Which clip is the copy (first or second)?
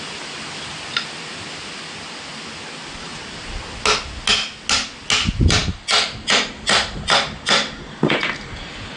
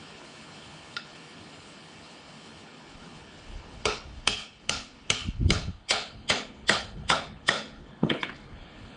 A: second